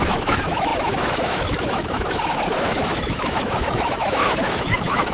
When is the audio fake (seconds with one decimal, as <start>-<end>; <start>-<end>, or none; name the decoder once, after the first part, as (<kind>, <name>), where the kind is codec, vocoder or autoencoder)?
0.0-5.1 (autoencoder, DAC-VAE)